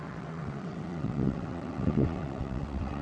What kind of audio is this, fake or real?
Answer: fake